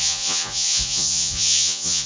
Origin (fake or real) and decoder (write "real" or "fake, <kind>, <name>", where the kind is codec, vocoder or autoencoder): fake, vocoder, Vocos